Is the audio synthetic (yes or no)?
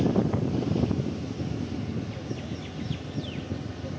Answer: no